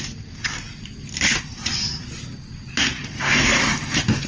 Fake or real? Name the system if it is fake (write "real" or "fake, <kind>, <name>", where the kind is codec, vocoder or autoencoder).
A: real